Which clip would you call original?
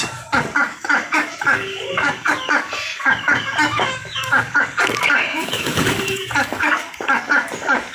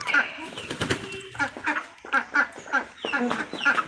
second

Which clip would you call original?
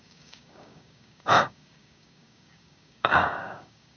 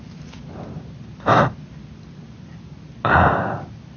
second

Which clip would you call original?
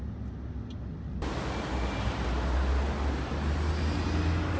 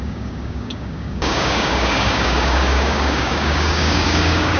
first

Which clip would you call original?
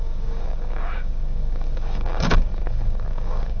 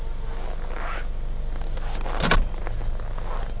second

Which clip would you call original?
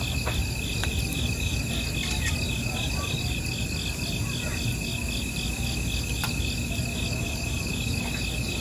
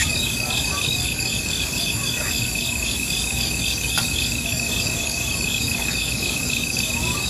first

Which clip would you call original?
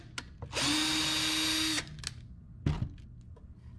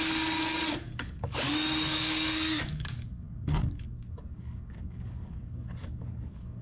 first